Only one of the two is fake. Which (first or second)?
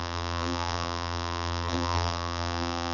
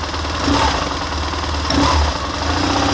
first